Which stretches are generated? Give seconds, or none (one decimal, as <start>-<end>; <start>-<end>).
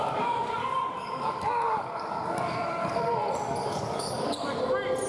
0.0-3.1; 3.6-4.6